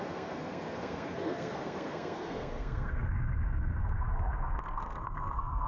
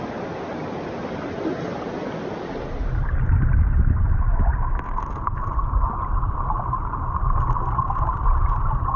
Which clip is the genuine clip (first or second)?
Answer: second